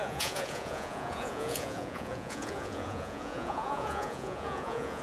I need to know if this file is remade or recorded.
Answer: remade